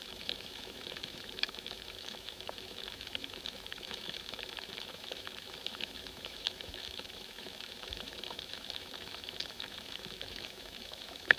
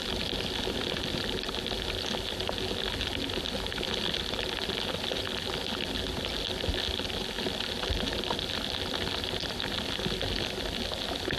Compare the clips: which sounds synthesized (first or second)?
first